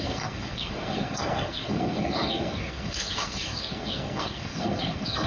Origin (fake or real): fake